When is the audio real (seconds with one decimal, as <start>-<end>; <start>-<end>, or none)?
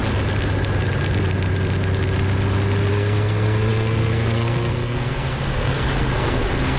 0.0-2.9